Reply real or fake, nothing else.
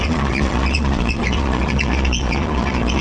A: fake